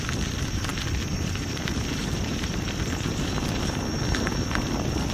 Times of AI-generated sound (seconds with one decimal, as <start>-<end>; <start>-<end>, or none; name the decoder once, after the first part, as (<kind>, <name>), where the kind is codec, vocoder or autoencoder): 0.7-3.8 (vocoder, BigVGAN v2)